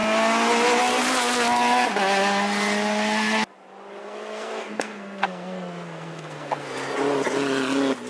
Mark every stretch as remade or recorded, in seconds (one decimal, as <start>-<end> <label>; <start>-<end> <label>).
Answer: 0.0-4.0 recorded; 4.0-6.7 remade; 6.7-8.1 recorded